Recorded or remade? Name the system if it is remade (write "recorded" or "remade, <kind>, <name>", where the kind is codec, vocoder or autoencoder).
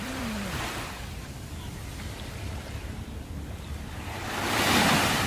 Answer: remade, vocoder, BigVGAN v2